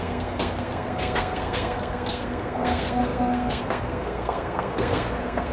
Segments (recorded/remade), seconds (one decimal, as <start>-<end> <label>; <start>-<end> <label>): 0.0-5.5 remade